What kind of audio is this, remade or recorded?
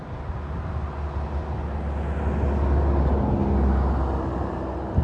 recorded